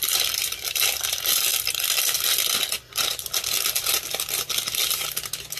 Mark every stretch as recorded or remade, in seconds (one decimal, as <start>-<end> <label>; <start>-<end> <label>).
0.0-5.6 recorded